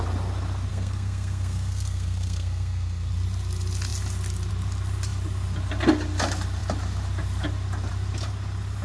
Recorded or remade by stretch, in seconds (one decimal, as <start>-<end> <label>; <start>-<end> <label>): 0.0-0.7 recorded; 0.7-3.1 remade; 3.1-8.8 recorded